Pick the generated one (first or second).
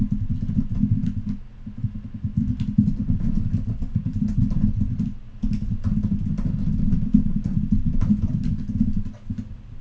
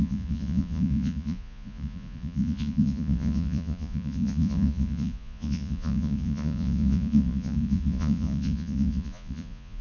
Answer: second